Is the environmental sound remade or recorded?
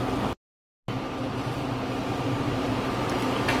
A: recorded